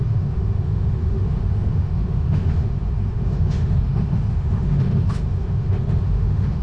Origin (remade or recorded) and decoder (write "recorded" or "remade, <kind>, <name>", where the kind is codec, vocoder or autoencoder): remade, autoencoder, DAC-VAE